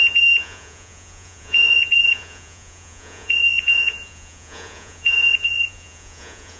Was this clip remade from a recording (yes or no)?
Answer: yes